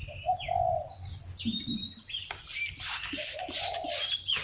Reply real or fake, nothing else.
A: real